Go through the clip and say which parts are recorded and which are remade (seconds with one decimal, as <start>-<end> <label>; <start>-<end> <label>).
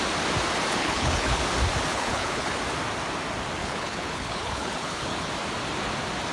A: 0.0-0.8 recorded; 0.8-1.4 remade; 1.4-1.9 recorded; 1.9-2.6 remade; 2.6-3.6 recorded; 3.6-5.3 remade; 5.3-6.3 recorded